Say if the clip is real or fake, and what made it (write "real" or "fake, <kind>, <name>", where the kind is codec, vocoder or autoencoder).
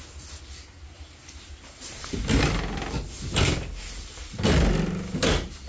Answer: real